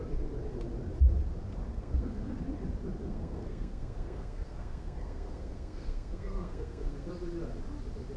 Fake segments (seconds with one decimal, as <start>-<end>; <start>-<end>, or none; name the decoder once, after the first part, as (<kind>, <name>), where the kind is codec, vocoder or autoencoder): 1.7-2.3 (codec, SNAC); 3.0-7.1